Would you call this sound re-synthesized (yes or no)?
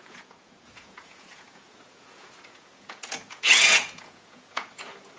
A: yes